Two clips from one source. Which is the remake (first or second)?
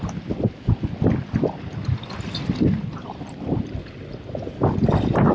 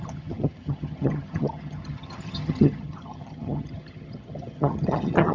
second